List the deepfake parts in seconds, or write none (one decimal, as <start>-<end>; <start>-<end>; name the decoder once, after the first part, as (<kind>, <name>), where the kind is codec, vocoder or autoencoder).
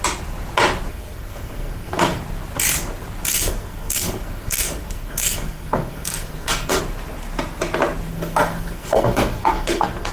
0.9-2.2 (codec, SNAC); 3.3-6.8; 8.1-10.1